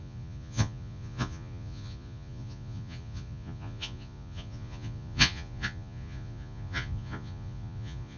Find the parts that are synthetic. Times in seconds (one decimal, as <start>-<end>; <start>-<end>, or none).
0.0-8.2